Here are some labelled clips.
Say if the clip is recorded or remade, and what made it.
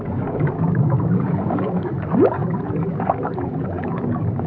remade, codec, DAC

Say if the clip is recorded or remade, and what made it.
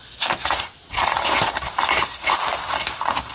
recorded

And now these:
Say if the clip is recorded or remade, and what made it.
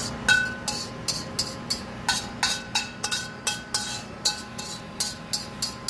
recorded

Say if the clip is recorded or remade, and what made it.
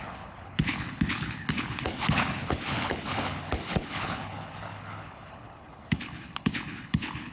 remade, codec, HILCodec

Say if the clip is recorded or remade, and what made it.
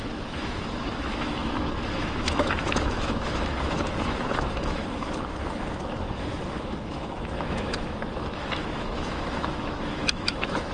remade, autoencoder, DAC-VAE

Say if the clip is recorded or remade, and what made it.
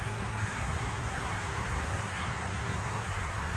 remade, codec, SNAC